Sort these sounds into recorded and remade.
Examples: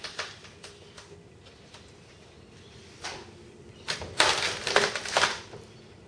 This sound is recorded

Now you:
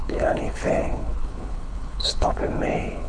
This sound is remade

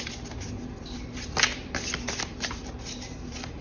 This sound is recorded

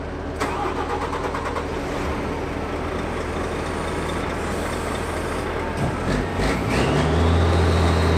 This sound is recorded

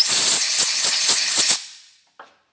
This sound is recorded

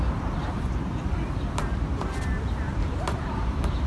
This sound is remade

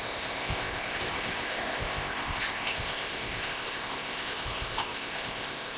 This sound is remade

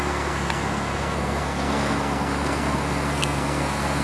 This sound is remade